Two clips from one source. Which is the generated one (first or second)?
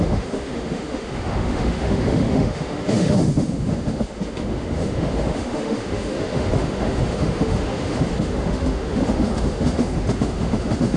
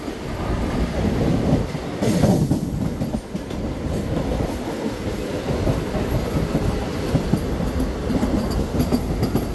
first